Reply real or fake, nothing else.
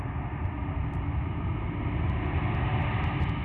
real